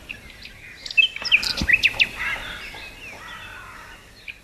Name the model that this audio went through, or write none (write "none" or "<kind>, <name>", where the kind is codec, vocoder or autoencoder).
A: none